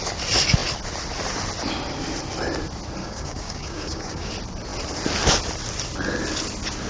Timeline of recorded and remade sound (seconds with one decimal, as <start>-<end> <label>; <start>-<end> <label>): 0.0-3.0 recorded; 3.0-4.3 remade; 4.3-6.9 recorded